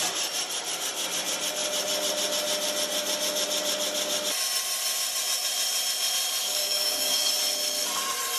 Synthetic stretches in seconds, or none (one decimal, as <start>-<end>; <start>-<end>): 6.4-7.3